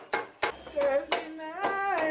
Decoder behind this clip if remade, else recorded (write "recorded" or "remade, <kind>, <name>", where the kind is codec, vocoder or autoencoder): recorded